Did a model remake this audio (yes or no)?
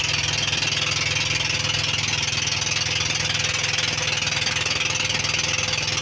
no